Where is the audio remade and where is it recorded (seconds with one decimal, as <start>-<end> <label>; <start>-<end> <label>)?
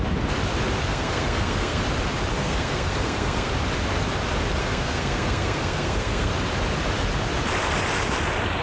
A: 0.0-0.9 recorded; 0.9-1.8 remade; 1.8-2.3 recorded; 2.3-3.5 remade; 3.5-4.6 recorded; 4.6-6.3 remade; 6.3-8.6 recorded